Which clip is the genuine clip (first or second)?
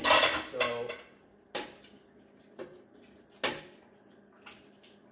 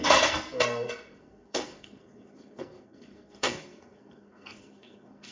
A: first